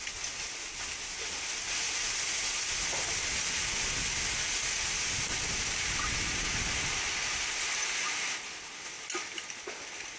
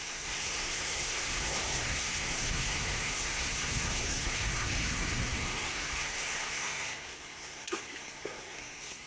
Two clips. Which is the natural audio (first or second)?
first